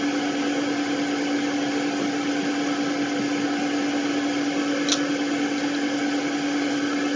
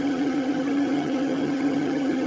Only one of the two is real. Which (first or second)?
first